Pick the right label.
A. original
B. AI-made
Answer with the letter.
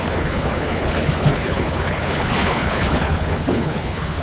B